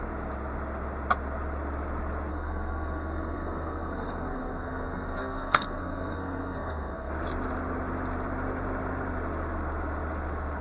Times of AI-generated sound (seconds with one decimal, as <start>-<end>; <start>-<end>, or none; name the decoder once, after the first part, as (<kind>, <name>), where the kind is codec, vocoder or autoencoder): 2.3-7.1 (codec, SNAC)